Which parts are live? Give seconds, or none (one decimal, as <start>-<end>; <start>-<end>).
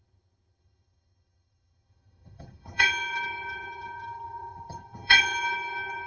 none